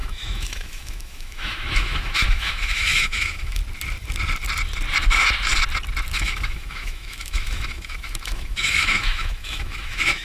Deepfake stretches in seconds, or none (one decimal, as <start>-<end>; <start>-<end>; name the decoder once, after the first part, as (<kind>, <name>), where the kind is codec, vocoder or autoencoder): 0.0-3.6 (autoencoder, DAC-VAE); 6.1-10.2